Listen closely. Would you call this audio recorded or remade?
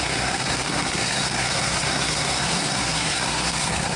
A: remade